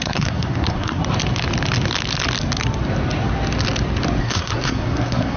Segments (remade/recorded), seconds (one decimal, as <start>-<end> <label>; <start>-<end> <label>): 0.0-1.0 remade; 1.0-4.2 recorded; 4.2-5.4 remade